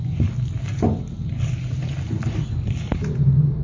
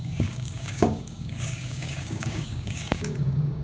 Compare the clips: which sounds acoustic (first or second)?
first